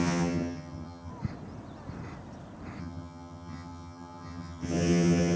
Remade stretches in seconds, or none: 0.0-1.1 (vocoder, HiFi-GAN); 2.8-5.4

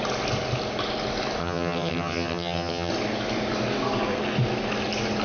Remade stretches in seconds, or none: 1.4-2.9 (vocoder, HiFi-GAN)

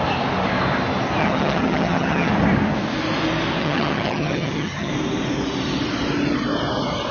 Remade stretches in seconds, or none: 1.2-2.3 (vocoder, HiFi-GAN); 3.6-4.9